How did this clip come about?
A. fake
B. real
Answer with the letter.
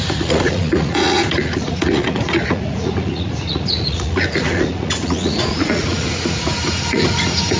A